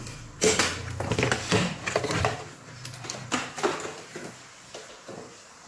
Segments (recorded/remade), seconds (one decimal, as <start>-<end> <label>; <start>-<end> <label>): 0.0-5.7 recorded